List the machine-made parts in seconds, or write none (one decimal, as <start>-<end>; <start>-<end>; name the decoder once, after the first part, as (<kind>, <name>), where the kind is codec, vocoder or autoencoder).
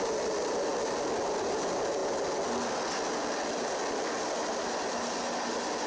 none